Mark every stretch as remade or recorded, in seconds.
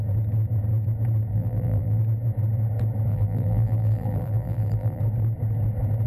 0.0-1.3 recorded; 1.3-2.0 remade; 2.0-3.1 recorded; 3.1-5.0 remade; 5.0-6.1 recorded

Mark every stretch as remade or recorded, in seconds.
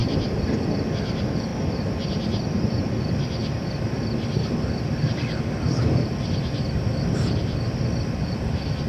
0.0-0.9 remade; 0.9-8.9 recorded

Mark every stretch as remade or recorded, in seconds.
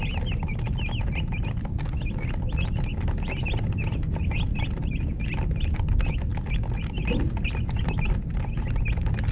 0.0-2.9 recorded; 2.9-4.7 remade; 4.7-6.3 recorded; 6.3-7.4 remade; 7.4-9.3 recorded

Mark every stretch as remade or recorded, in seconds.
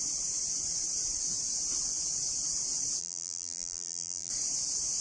0.0-3.0 recorded; 3.0-4.3 remade; 4.3-5.0 recorded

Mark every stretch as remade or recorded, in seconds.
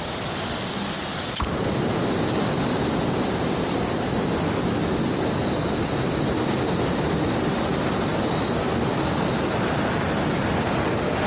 0.0-11.3 recorded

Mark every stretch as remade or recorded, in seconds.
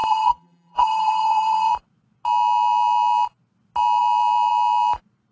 0.0-1.7 remade; 1.7-5.3 recorded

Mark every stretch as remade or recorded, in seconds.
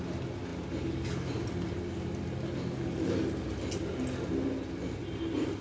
0.0-5.6 recorded